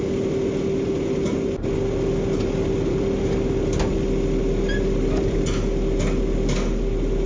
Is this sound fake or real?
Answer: real